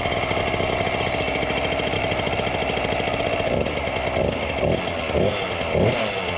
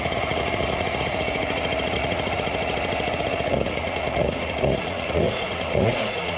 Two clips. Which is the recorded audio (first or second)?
first